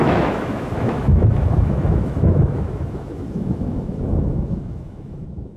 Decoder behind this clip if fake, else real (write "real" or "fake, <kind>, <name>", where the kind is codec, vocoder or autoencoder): fake, autoencoder, DAC-VAE